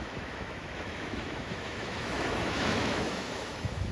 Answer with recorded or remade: remade